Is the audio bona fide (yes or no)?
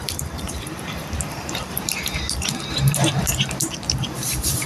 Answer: no